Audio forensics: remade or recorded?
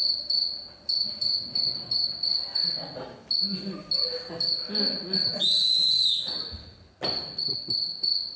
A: recorded